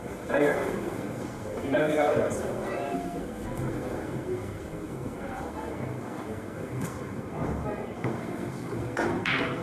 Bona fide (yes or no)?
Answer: no